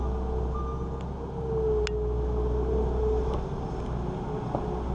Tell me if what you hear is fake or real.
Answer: real